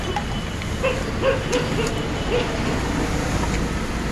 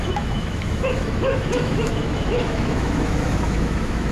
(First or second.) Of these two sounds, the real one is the first